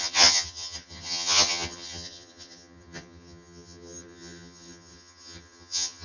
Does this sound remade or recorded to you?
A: remade